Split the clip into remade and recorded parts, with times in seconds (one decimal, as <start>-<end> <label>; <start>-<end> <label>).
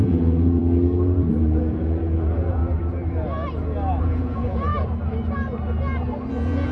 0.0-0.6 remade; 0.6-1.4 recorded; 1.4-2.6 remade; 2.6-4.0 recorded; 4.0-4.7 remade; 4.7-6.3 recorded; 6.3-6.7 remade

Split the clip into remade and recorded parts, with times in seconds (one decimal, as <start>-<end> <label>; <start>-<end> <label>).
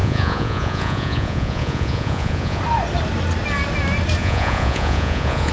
0.0-2.6 remade; 2.6-4.2 recorded; 4.2-5.5 remade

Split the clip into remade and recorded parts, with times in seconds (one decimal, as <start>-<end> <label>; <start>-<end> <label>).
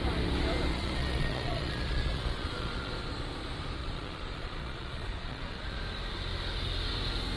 0.0-0.7 recorded; 0.7-2.9 remade; 2.9-3.8 recorded; 3.8-5.8 remade; 5.8-7.4 recorded